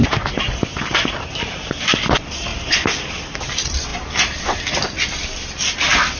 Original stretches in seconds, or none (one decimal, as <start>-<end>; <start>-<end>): 0.0-6.2